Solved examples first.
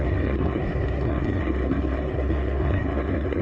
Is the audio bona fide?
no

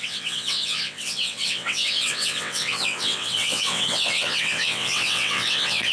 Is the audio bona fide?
no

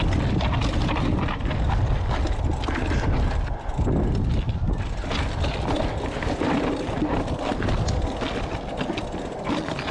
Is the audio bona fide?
yes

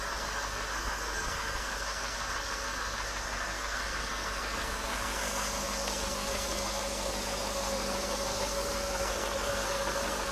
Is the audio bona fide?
no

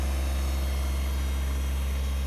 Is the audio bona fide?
yes